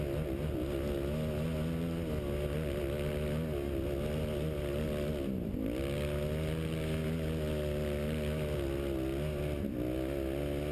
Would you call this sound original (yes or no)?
yes